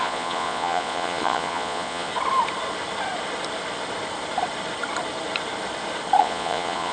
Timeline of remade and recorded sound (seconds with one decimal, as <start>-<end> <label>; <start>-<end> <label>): 0.0-2.1 remade; 2.1-6.2 recorded; 6.2-6.9 remade